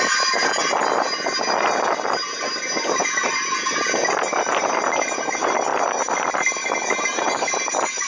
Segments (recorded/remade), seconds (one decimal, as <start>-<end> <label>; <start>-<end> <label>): 0.0-8.1 recorded